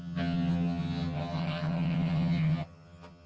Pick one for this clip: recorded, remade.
remade